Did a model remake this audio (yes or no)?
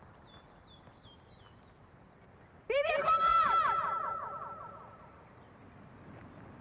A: no